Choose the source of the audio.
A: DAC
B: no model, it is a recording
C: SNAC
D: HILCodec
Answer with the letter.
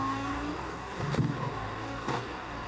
A